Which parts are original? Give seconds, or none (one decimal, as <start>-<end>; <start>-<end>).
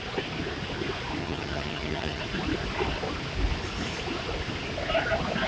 0.0-1.2; 2.2-5.5